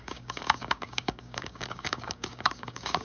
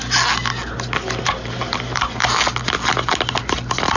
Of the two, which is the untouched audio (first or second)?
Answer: second